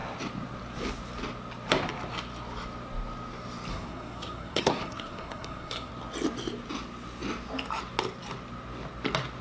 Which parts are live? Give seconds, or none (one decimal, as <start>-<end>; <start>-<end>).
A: 0.0-3.7; 5.9-9.4